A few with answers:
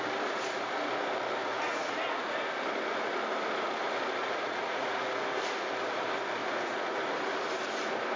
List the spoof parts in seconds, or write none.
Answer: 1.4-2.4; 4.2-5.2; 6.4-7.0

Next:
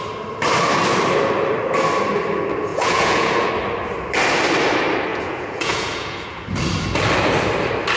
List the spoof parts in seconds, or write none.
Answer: 2.7-3.5; 5.1-6.4

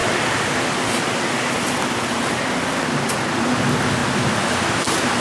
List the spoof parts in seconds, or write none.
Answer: none

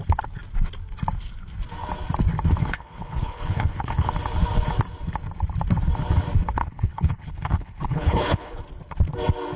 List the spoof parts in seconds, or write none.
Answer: 2.6-4.1; 6.6-8.6